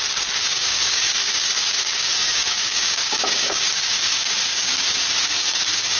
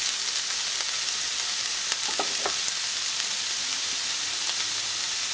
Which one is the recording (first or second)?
second